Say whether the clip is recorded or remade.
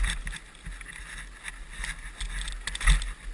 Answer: recorded